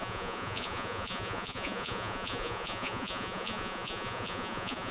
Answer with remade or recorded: remade